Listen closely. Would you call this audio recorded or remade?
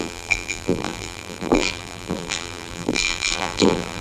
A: remade